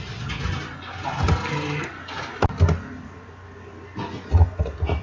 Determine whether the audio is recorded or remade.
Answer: recorded